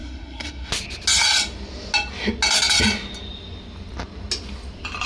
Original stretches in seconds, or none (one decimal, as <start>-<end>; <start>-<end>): 0.7-5.1